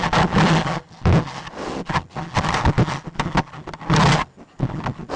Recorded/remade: recorded